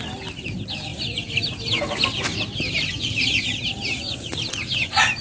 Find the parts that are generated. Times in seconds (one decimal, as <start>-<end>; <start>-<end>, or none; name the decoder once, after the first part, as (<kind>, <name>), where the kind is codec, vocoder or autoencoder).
0.9-1.5 (vocoder, BigVGAN v2); 2.3-4.4